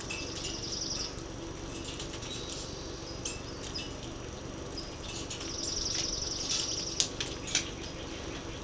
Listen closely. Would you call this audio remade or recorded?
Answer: recorded